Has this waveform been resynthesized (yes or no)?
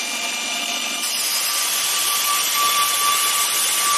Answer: no